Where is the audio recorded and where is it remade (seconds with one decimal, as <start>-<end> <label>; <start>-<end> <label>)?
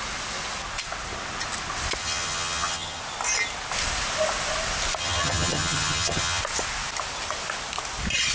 0.0-2.0 recorded; 2.0-3.0 remade; 3.0-5.0 recorded; 5.0-6.4 remade; 6.4-8.3 recorded